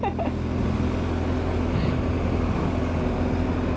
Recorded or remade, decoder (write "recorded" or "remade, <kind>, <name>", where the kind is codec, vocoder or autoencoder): recorded